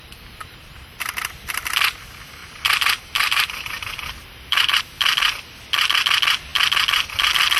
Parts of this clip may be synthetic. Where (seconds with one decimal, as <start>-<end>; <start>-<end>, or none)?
2.4-4.8